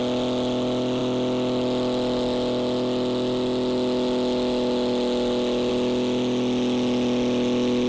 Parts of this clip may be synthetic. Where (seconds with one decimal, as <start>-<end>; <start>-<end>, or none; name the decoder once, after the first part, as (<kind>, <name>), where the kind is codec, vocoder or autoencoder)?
none